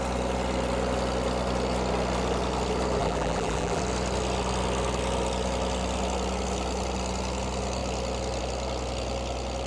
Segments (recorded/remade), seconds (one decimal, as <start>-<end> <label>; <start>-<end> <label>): 0.0-3.0 recorded; 3.0-3.8 remade; 3.8-9.7 recorded